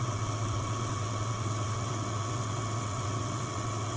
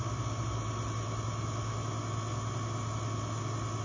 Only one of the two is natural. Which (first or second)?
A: second